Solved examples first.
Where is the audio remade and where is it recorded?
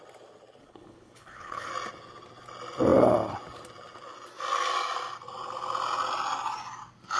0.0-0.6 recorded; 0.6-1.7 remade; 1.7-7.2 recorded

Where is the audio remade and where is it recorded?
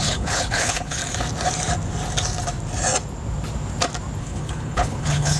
0.0-1.0 remade; 1.0-4.2 recorded; 4.2-5.4 remade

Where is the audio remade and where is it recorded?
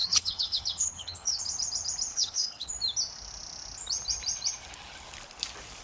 0.0-1.4 remade; 1.4-2.1 recorded; 2.1-2.7 remade; 2.7-5.8 recorded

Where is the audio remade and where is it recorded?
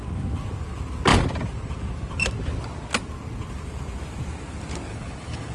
0.0-4.9 recorded; 4.9-5.5 remade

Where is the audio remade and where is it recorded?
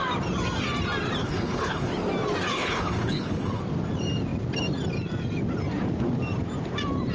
0.0-1.2 recorded; 1.2-1.9 remade; 1.9-2.5 recorded; 2.5-3.6 remade; 3.6-7.1 recorded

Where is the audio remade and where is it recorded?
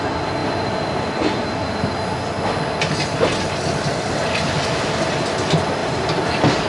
0.0-6.7 recorded